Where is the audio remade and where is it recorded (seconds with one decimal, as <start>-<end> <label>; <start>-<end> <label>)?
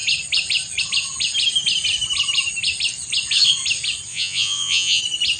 0.0-4.1 recorded; 4.1-5.0 remade; 5.0-5.4 recorded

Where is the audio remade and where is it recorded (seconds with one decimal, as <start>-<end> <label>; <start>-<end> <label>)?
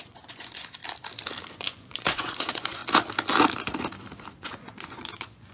0.0-0.8 remade; 0.8-1.5 recorded; 1.5-2.8 remade; 2.8-4.4 recorded; 4.4-5.5 remade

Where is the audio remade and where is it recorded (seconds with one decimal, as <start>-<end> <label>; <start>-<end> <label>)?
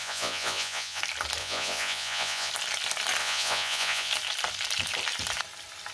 0.0-1.0 remade; 1.0-1.4 recorded; 1.4-2.5 remade; 2.5-3.2 recorded; 3.2-4.1 remade; 4.1-5.9 recorded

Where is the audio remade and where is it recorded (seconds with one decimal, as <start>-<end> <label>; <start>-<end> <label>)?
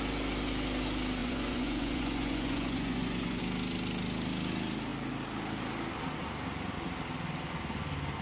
0.0-1.2 recorded; 1.2-3.4 remade; 3.4-8.2 recorded